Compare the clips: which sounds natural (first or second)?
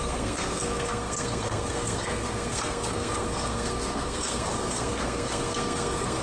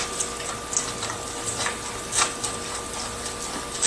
second